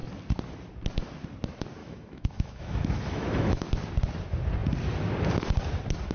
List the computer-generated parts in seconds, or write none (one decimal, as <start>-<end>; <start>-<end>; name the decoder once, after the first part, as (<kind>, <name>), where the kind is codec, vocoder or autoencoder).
1.8-3.7 (autoencoder, DAC-VAE)